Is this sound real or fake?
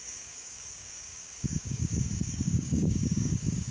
fake